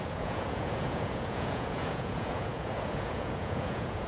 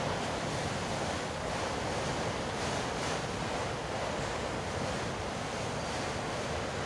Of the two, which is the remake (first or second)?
first